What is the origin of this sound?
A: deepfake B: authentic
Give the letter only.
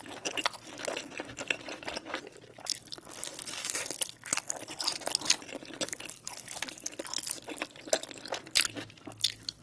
B